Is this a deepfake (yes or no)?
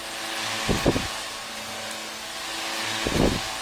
no